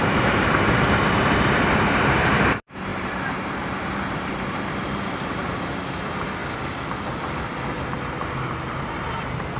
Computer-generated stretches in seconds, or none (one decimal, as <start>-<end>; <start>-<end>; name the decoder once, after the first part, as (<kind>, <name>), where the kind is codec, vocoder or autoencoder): 0.0-6.4 (vocoder, BigVGAN v2); 8.0-9.6